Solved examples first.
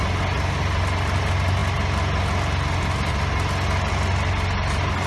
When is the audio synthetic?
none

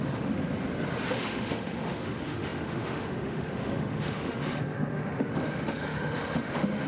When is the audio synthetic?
0.0-0.4 (autoencoder, DAC-VAE); 1.1-6.9

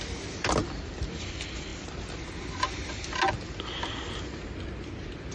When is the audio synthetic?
none

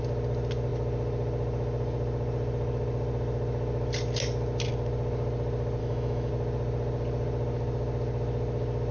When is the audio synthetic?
5.8-6.3 (autoencoder, DAC-VAE)

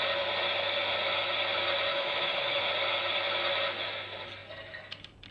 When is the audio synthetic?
1.9-2.6 (autoencoder, DAC-VAE)

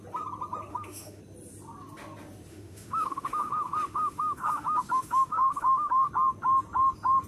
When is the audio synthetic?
0.7-1.2 (autoencoder, DAC-VAE); 2.5-6.1